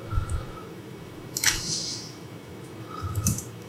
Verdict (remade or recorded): remade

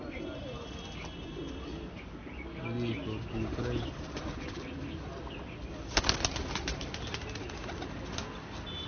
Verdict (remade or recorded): recorded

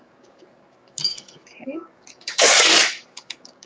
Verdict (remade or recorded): remade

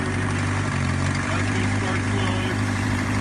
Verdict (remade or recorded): remade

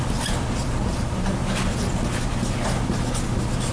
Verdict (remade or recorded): recorded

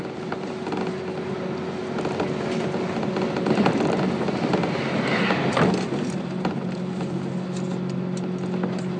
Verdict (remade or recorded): recorded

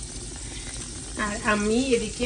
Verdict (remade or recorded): recorded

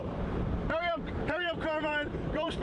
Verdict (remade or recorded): remade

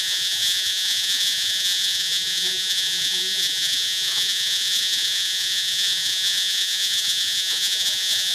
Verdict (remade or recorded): remade